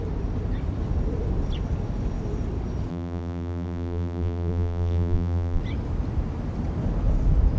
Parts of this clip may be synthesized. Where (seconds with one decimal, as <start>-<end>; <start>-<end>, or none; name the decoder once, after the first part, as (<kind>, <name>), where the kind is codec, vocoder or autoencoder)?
2.9-5.6 (vocoder, BigVGAN v2)